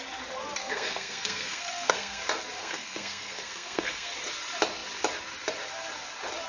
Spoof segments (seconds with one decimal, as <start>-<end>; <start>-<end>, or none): 0.6-2.2; 2.6-4.1